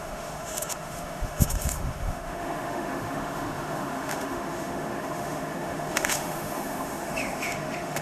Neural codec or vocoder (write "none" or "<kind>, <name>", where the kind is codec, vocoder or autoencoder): autoencoder, DAC-VAE